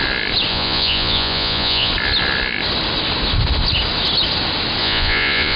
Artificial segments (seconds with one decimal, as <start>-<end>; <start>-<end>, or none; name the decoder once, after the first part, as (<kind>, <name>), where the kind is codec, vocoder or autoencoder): 0.5-1.9 (vocoder, Vocos); 4.8-5.6